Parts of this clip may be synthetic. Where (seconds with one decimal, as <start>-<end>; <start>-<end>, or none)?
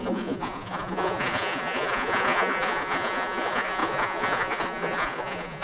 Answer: 0.0-5.6